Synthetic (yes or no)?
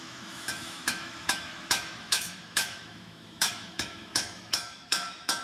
yes